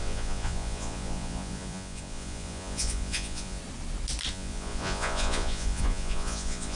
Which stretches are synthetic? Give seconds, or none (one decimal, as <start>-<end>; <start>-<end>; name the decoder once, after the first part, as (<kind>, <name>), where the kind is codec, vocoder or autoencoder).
0.0-3.6 (vocoder, Vocos); 4.3-6.8